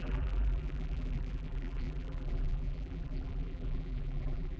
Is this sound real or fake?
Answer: fake